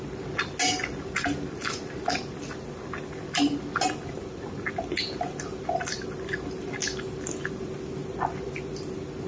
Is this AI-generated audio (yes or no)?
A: no